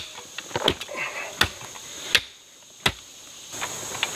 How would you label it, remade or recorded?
recorded